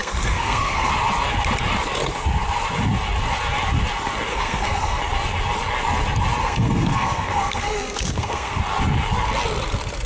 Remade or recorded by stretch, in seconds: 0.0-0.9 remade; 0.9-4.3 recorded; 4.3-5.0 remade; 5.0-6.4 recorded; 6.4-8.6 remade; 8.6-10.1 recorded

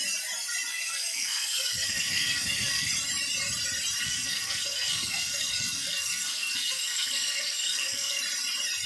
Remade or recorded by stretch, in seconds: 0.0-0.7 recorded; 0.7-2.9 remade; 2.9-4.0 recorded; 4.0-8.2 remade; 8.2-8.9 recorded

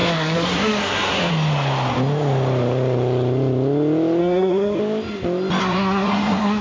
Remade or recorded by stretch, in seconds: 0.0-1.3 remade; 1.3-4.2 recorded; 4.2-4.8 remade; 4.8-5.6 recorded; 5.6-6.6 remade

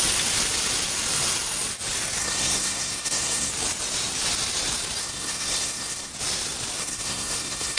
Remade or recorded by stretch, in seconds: 0.0-2.2 recorded; 2.2-3.5 remade; 3.5-5.0 recorded; 5.0-6.1 remade; 6.1-6.8 recorded; 6.8-7.8 remade

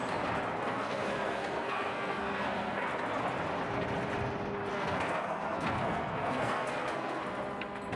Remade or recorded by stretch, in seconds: 0.0-0.6 recorded; 0.6-2.9 remade; 2.9-4.7 recorded; 4.7-7.2 remade; 7.2-8.0 recorded